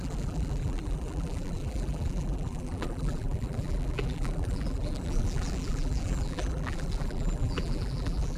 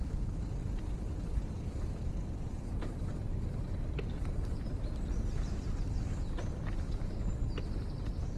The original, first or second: second